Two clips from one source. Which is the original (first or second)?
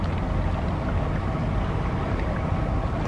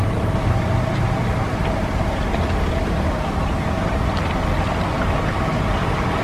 first